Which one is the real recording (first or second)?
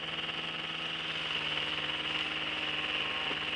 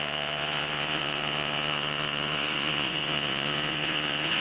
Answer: first